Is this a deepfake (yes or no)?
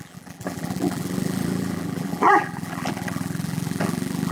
yes